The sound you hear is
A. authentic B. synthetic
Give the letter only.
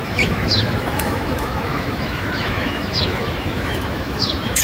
B